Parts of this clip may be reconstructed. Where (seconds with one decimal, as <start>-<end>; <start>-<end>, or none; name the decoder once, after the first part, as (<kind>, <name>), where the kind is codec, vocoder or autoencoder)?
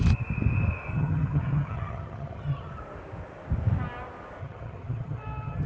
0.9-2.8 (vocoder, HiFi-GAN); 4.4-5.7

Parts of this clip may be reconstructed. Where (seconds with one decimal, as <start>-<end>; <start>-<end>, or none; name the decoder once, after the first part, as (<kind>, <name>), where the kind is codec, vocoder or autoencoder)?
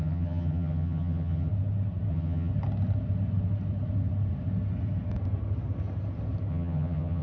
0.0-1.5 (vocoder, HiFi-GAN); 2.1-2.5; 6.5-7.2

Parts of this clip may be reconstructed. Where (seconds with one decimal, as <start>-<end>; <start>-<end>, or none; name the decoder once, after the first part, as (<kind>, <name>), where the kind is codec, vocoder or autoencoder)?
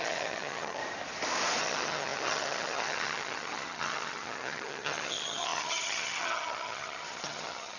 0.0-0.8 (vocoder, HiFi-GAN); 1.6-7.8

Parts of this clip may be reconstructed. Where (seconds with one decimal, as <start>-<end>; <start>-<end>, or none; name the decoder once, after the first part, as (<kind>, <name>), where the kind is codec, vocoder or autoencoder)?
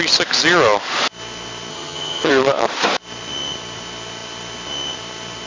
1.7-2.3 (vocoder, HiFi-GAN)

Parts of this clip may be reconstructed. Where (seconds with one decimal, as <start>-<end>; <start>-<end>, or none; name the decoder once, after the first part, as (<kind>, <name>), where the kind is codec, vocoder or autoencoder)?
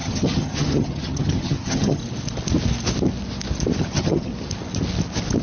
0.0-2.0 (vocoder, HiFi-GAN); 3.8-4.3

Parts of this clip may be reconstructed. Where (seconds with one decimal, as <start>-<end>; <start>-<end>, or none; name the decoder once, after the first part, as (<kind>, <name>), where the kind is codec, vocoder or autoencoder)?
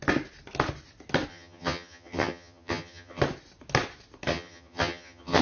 1.3-3.2 (vocoder, HiFi-GAN); 4.3-5.4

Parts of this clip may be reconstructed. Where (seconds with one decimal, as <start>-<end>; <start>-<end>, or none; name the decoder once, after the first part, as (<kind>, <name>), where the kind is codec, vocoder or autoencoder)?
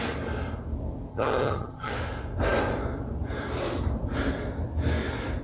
1.1-1.9 (vocoder, HiFi-GAN)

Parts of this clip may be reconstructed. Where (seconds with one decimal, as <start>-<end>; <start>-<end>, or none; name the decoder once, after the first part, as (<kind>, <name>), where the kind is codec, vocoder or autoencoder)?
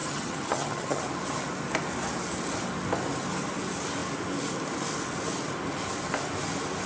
0.0-1.0 (vocoder, HiFi-GAN)